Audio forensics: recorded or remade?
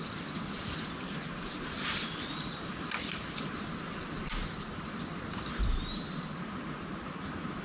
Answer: recorded